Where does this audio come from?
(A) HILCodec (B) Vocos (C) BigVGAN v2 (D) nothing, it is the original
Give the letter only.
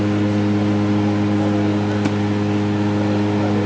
D